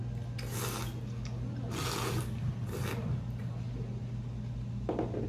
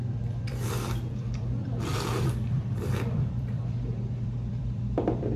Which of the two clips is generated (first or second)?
second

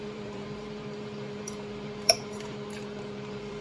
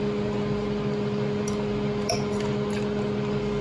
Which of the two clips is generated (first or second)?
first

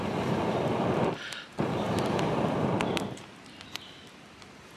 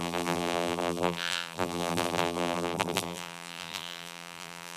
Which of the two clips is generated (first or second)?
second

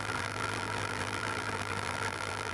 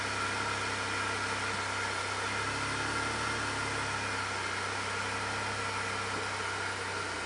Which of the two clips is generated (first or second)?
first